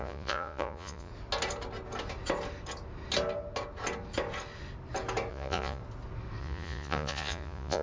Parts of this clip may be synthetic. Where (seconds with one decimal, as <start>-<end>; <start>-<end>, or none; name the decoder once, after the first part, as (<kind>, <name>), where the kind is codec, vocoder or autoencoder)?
0.0-1.1 (vocoder, Vocos); 5.3-5.8; 6.4-7.8

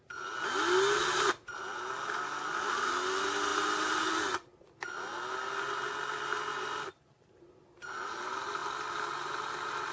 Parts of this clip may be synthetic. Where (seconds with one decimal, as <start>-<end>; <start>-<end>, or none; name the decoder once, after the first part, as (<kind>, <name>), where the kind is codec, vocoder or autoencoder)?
8.6-9.4 (vocoder, BigVGAN v2)

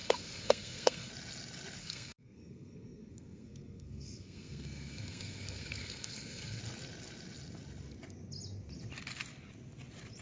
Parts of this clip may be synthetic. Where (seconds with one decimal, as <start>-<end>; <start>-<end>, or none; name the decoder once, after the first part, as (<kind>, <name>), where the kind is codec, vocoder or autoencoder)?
0.0-1.1 (codec, SNAC); 1.8-6.6

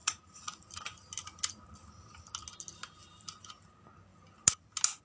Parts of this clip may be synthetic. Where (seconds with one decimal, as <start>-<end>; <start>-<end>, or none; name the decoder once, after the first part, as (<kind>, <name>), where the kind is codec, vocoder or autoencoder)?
0.0-0.6 (vocoder, Vocos)

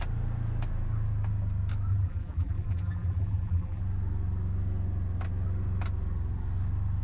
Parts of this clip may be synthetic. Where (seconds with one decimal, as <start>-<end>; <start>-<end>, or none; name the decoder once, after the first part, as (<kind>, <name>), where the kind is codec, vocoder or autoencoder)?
1.9-3.8 (vocoder, BigVGAN v2)

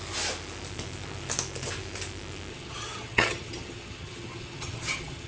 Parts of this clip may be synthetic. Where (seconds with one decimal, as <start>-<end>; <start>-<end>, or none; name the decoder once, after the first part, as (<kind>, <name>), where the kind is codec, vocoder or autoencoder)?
2.5-5.3 (vocoder, HiFi-GAN)

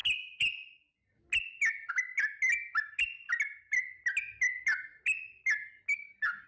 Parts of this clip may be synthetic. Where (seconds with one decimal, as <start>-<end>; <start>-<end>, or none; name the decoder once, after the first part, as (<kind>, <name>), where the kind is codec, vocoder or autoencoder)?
none

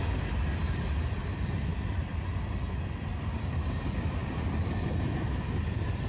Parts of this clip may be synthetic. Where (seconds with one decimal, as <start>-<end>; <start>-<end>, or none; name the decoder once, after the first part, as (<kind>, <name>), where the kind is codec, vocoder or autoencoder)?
none